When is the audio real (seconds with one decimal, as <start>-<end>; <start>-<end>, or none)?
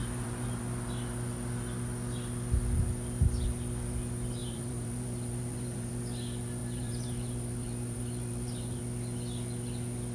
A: 0.6-4.4; 5.9-6.6; 8.8-10.1